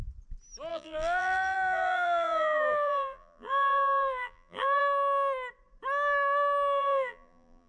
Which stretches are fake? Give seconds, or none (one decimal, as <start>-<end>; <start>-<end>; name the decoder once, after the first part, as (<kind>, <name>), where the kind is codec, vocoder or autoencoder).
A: 0.7-4.8 (vocoder, BigVGAN v2); 6.8-7.7